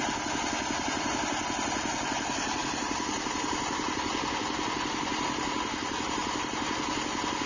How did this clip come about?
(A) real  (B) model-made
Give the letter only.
A